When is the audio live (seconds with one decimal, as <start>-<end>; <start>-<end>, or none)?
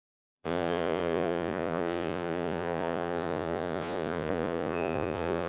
none